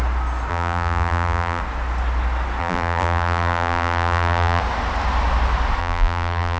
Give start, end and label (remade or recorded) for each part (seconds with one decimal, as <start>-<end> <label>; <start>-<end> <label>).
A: 0.0-0.5 recorded; 0.5-1.6 remade; 1.6-2.6 recorded; 2.6-4.6 remade; 4.6-5.8 recorded; 5.8-6.6 remade